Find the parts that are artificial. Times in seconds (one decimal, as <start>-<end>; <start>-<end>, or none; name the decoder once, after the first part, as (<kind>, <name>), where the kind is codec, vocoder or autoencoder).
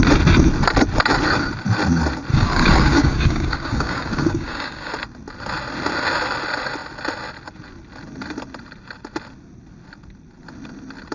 2.3-4.9 (codec, DAC)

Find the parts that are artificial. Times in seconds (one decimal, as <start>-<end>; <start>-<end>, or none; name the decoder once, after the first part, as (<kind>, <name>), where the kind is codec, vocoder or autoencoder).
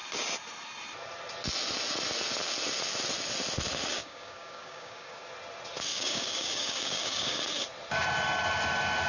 4.0-5.3 (codec, DAC); 5.9-7.4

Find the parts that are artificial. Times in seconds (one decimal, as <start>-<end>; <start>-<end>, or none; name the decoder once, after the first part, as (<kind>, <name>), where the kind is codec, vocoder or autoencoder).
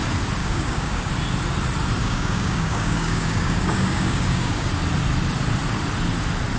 0.4-1.1 (codec, DAC); 2.0-4.7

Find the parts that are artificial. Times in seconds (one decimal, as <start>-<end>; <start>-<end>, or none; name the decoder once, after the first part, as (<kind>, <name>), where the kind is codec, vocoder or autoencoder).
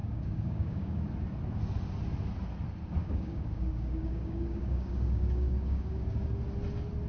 0.0-1.0 (codec, DAC); 3.0-6.4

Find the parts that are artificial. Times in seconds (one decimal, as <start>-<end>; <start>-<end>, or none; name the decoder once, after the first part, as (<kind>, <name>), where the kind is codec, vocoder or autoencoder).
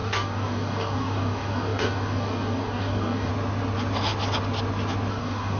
0.0-3.3 (codec, DAC); 5.1-5.6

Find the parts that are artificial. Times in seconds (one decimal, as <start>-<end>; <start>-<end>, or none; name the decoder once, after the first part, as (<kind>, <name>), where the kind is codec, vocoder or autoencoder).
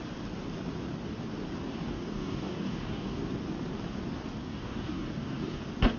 1.7-3.2 (codec, DAC); 4.4-5.6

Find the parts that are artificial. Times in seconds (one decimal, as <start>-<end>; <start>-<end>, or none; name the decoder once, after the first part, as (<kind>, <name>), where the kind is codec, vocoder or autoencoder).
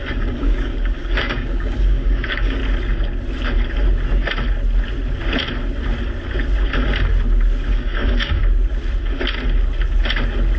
0.0-2.6 (codec, DAC); 7.7-8.4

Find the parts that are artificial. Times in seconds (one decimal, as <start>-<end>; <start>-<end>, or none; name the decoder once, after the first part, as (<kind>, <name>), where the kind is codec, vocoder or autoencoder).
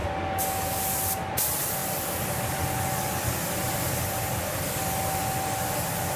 0.0-0.8 (codec, DAC)